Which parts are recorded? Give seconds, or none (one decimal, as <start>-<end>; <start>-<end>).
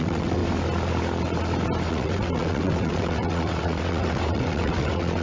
0.4-1.9